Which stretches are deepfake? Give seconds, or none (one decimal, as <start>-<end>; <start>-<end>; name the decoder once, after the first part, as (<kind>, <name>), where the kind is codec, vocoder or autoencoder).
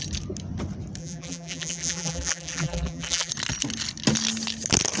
1.0-3.3 (vocoder, BigVGAN v2)